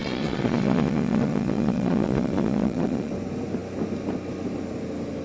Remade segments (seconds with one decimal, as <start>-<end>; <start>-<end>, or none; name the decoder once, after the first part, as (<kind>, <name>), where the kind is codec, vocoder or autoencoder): 0.0-3.1 (vocoder, Vocos)